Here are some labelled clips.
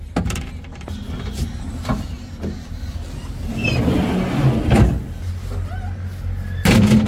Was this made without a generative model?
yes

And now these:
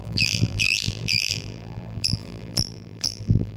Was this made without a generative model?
no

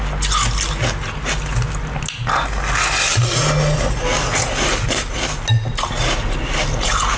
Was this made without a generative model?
yes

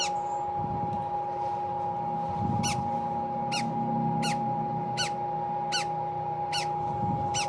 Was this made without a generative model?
yes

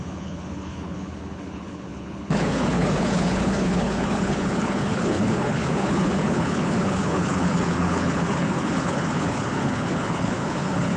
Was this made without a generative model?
no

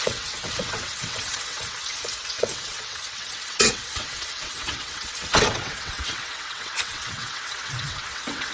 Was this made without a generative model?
no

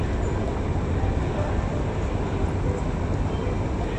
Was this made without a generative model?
yes